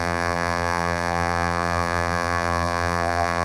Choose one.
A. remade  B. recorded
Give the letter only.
A